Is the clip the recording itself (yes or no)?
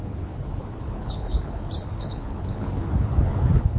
no